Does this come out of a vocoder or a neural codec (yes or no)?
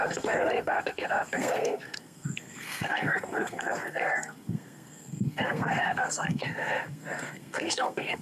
yes